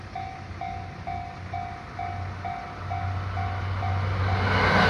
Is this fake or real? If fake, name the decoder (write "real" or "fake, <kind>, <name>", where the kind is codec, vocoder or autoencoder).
real